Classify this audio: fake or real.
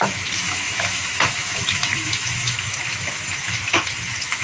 fake